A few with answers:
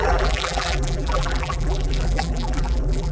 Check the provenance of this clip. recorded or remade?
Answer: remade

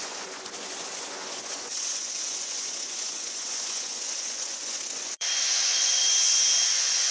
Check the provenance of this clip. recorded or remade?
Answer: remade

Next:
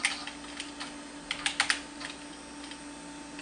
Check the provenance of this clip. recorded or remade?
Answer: recorded